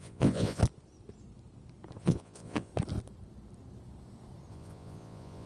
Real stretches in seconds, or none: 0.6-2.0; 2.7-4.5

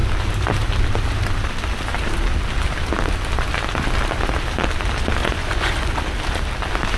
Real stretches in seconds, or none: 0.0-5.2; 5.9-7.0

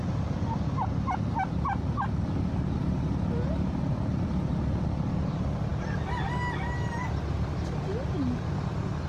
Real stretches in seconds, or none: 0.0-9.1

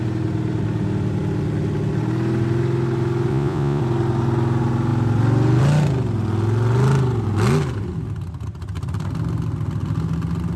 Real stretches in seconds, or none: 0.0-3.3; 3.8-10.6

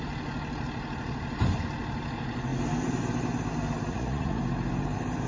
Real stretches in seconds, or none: 0.0-3.9; 4.4-5.3

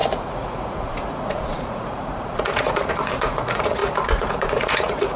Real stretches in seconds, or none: none